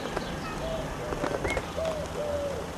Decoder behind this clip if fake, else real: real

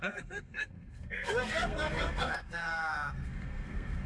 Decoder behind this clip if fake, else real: fake, codec, SNAC